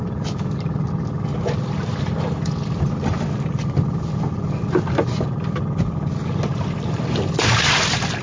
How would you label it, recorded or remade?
recorded